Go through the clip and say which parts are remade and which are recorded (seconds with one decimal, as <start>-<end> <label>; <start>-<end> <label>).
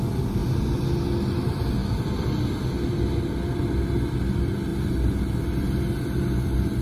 0.0-6.8 recorded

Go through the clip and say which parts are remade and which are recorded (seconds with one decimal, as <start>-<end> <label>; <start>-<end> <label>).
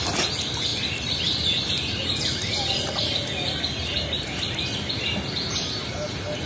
0.0-6.5 recorded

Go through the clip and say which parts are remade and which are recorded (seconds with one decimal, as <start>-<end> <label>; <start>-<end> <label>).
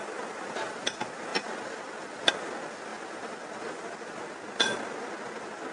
0.0-1.3 recorded; 1.3-2.3 remade; 2.3-2.9 recorded; 2.9-3.6 remade; 3.6-5.7 recorded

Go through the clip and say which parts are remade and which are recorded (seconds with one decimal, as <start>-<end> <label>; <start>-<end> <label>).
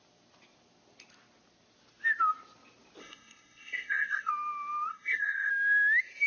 0.0-3.0 recorded; 3.0-4.3 remade; 4.3-4.9 recorded; 4.9-5.5 remade; 5.5-6.3 recorded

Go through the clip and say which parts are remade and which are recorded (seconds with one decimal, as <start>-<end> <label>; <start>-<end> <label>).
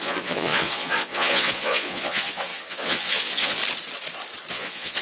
0.0-3.6 remade; 3.6-4.5 recorded; 4.5-5.0 remade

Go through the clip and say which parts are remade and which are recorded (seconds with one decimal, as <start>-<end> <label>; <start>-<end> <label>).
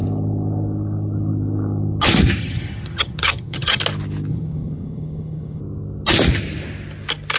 0.0-2.4 recorded; 2.4-3.8 remade; 3.8-4.3 recorded; 4.3-5.6 remade; 5.6-7.4 recorded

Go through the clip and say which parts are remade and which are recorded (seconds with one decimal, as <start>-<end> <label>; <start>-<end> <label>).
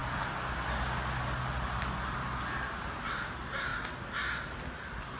0.0-5.2 recorded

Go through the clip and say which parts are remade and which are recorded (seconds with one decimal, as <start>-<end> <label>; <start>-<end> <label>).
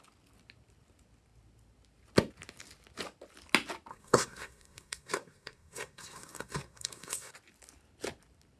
0.0-3.9 recorded; 3.9-7.3 remade; 7.3-8.6 recorded